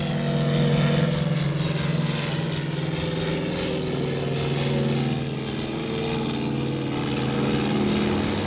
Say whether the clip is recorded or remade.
recorded